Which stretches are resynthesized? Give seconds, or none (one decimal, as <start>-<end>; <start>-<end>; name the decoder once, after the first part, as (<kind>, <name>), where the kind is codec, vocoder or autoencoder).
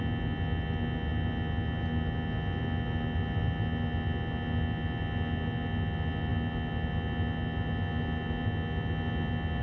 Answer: none